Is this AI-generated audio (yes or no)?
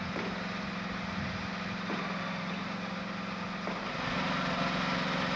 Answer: no